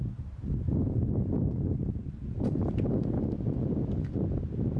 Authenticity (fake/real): real